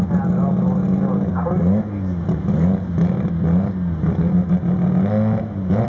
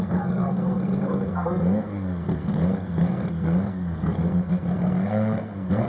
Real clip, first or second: first